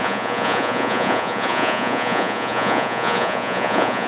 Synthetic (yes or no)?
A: yes